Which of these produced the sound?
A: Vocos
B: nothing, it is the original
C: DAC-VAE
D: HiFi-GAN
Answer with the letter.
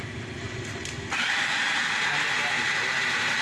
B